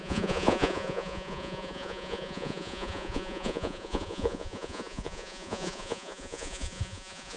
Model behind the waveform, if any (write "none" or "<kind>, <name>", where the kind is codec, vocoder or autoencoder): vocoder, Vocos